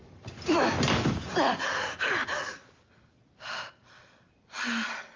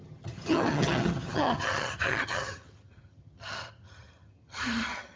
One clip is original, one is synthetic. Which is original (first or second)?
first